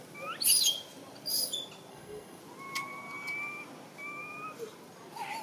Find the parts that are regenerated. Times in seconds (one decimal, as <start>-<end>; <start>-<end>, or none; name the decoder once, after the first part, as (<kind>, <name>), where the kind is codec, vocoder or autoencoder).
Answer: 1.9-2.4 (codec, SNAC)